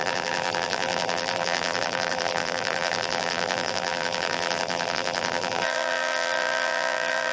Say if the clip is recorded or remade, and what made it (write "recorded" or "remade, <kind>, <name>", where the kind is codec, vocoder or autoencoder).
remade, vocoder, BigVGAN v2